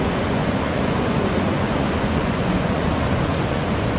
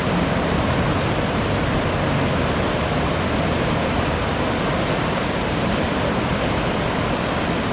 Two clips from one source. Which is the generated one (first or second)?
first